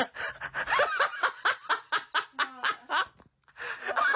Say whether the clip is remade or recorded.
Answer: recorded